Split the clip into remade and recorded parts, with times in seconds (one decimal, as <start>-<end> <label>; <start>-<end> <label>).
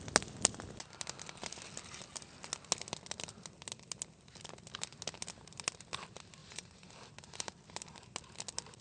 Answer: 0.0-6.4 recorded; 6.4-6.9 remade; 6.9-8.8 recorded